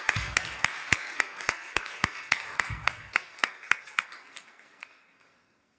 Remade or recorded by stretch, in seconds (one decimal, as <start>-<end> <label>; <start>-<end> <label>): 0.0-5.8 remade